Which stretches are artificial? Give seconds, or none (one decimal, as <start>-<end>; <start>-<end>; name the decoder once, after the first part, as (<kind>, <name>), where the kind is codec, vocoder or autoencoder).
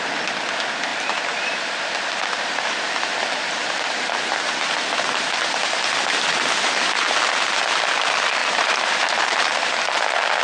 0.9-4.7 (vocoder, BigVGAN v2); 8.4-9.7